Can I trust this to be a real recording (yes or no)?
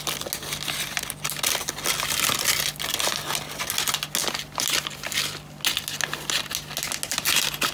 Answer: yes